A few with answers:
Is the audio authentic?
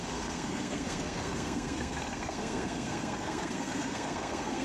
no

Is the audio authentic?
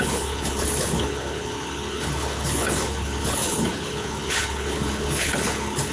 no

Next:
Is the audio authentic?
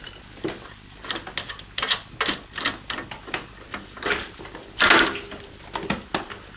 yes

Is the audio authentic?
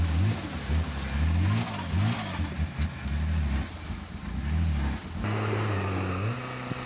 yes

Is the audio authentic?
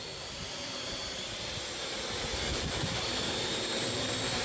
no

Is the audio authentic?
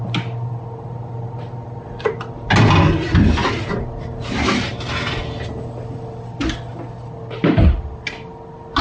yes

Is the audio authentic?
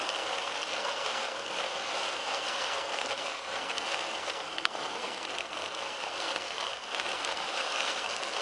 no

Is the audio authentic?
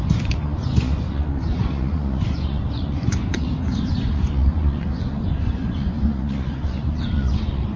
no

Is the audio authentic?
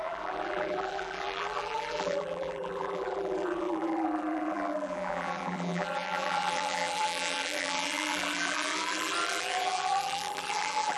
no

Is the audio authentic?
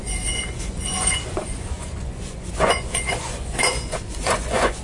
no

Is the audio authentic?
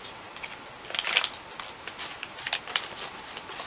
yes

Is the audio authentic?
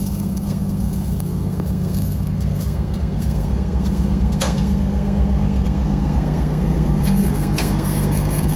no